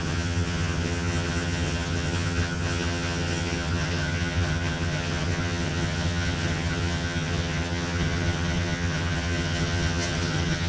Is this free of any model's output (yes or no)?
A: no